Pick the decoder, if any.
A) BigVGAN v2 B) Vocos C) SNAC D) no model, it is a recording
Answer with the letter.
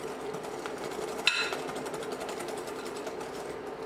D